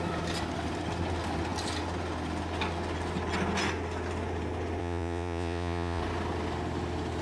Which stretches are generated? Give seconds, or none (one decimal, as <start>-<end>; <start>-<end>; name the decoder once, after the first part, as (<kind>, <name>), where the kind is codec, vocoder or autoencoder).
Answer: 4.8-6.0 (vocoder, Vocos)